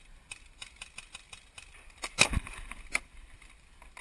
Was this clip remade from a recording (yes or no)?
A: yes